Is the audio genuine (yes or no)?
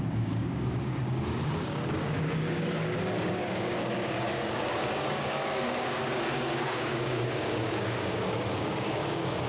no